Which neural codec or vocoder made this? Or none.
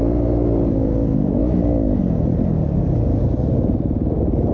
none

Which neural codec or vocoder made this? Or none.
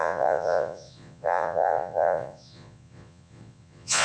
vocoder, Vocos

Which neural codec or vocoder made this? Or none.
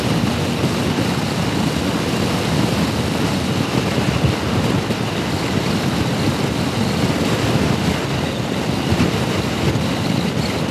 none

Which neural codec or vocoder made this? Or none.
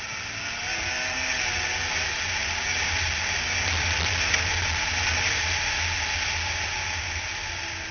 none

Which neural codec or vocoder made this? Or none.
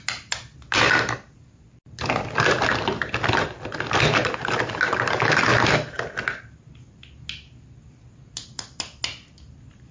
none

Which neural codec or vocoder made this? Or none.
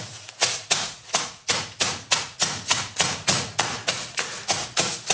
vocoder, Vocos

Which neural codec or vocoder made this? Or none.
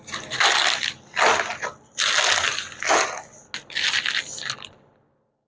none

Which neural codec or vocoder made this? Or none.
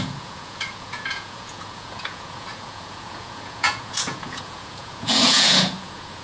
vocoder, Vocos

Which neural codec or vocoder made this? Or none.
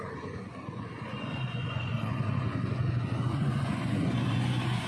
vocoder, Vocos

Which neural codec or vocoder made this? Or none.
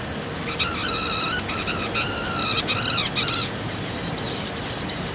none